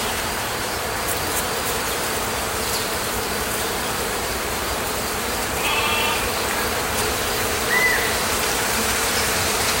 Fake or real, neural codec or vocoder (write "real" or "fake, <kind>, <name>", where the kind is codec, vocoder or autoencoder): fake, vocoder, BigVGAN v2